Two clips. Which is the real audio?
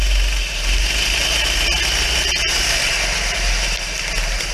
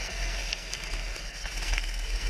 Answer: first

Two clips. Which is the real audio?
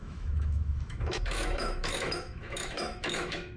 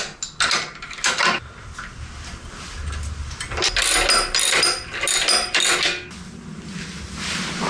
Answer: second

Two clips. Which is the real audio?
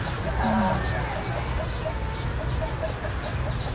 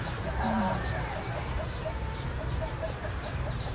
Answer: first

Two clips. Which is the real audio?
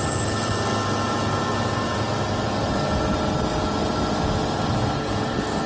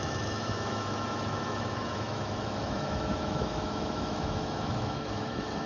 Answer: first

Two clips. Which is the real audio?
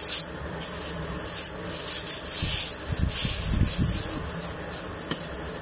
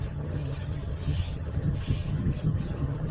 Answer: first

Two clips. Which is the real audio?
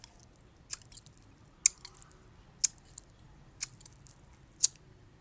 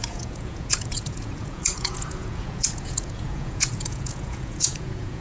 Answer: first